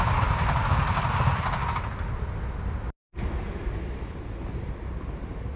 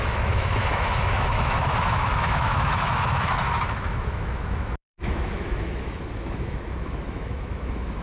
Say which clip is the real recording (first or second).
first